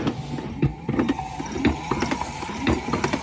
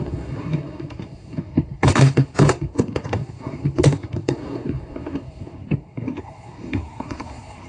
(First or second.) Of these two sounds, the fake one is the second